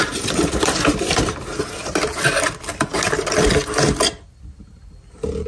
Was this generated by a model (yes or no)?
no